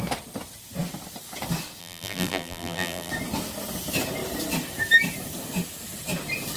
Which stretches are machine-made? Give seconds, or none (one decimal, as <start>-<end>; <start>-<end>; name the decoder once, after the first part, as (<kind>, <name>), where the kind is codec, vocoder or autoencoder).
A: 1.8-3.1 (vocoder, BigVGAN v2)